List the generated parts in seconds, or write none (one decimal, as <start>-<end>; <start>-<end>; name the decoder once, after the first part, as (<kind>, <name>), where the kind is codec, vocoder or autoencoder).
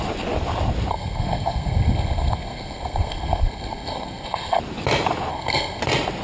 0.9-4.6 (codec, SNAC); 5.3-5.8